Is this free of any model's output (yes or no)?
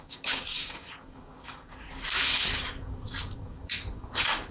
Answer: no